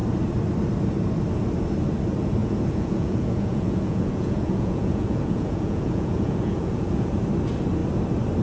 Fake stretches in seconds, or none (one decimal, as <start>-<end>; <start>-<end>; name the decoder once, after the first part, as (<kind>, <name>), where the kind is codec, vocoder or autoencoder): 2.4-7.2 (vocoder, Vocos)